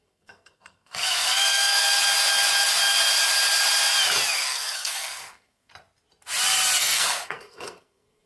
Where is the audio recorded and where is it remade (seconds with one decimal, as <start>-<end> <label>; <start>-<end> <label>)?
0.0-1.8 remade; 1.8-4.3 recorded; 4.3-5.7 remade; 5.7-6.8 recorded; 6.8-8.3 remade